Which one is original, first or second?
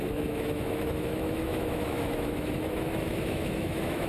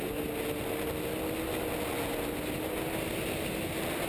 second